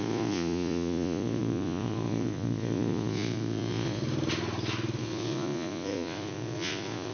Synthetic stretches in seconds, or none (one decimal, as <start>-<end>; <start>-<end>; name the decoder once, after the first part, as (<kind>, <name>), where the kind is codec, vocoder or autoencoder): 0.0-4.0 (vocoder, Vocos); 5.0-7.1